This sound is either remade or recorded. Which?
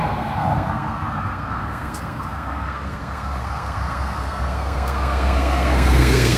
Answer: remade